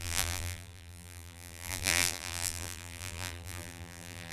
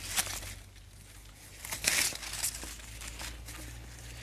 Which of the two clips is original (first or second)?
second